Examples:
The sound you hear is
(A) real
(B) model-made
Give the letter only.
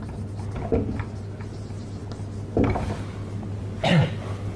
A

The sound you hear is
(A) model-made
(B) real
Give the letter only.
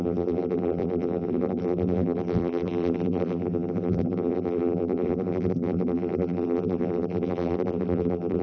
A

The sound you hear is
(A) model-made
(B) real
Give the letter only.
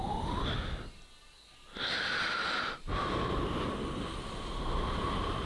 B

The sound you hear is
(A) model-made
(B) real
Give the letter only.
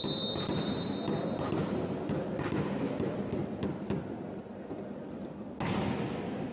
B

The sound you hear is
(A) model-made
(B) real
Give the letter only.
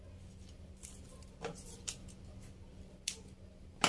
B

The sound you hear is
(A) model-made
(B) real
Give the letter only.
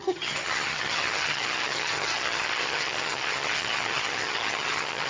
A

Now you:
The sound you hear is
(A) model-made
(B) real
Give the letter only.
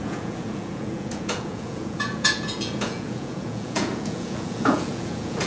A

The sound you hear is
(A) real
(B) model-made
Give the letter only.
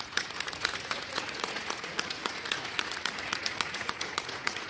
B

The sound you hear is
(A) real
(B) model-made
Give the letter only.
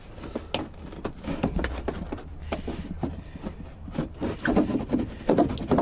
A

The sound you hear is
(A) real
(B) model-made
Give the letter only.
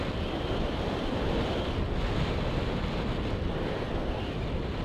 A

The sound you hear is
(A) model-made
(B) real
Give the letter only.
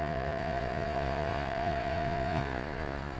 A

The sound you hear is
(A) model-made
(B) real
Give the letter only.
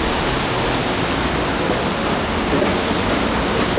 B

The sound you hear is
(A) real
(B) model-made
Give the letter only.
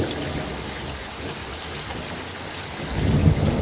A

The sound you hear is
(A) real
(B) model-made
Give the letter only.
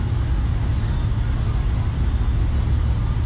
A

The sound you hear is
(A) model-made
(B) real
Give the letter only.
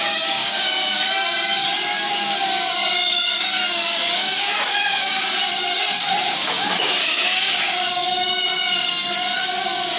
A